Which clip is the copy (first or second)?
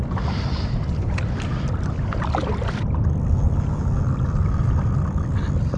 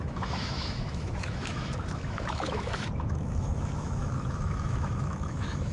second